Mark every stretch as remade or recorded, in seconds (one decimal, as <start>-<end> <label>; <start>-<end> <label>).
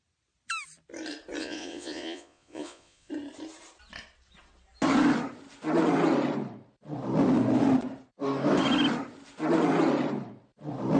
0.0-1.4 recorded; 1.4-3.1 remade; 3.1-11.0 recorded